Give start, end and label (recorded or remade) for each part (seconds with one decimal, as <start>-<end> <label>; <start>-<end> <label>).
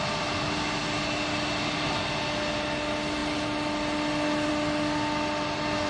0.0-5.9 recorded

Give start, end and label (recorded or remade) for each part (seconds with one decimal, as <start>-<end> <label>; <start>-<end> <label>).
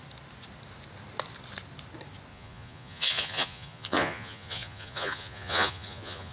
0.0-2.3 recorded; 2.3-6.3 remade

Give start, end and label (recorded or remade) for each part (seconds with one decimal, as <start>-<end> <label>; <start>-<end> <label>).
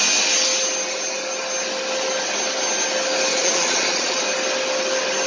0.0-3.3 recorded; 3.3-4.2 remade; 4.2-5.3 recorded